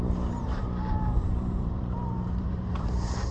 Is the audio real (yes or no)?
no